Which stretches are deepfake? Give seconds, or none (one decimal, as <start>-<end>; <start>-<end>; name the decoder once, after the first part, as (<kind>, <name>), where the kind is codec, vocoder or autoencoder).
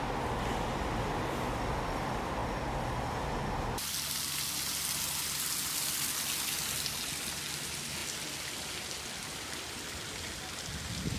none